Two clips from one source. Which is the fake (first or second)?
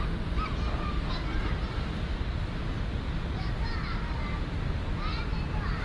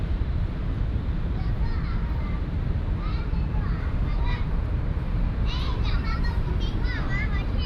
second